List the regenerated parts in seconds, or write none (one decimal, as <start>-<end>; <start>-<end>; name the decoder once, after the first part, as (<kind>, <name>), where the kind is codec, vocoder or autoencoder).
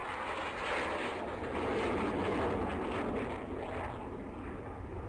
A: none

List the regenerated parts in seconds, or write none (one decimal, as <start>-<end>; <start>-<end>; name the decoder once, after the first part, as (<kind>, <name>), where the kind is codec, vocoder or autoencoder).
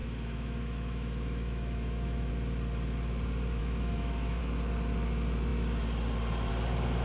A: 0.0-2.3 (autoencoder, DAC-VAE); 3.6-4.4